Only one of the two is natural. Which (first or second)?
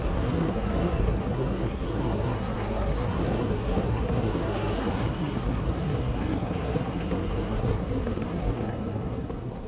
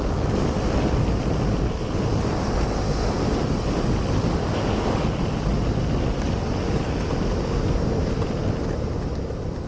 second